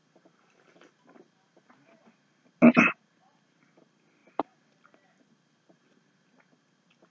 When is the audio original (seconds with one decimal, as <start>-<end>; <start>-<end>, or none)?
0.0-7.1

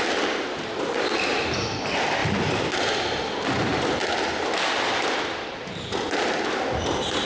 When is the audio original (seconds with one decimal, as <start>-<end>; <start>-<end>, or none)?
0.0-2.2; 3.6-4.0; 5.8-7.3

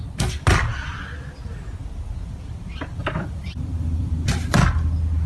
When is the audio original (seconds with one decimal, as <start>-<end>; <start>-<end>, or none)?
0.0-3.0; 4.7-5.3

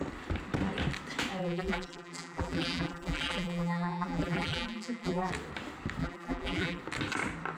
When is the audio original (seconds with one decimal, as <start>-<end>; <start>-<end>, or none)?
0.0-1.4; 5.3-6.0; 6.8-7.6

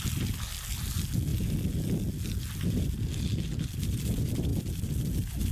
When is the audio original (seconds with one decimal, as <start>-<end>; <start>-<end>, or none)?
0.0-5.5

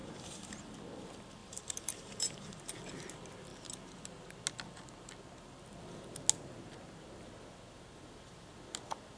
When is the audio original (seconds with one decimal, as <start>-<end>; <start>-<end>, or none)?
0.6-1.4; 2.7-9.2

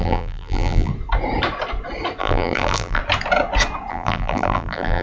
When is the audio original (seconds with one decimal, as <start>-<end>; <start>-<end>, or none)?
0.9-2.2; 3.0-3.9